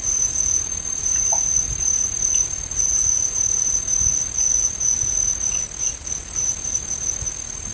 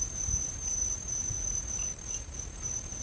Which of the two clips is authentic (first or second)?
first